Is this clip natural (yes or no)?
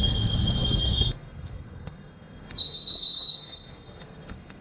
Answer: no